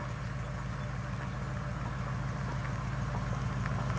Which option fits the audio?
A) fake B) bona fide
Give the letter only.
B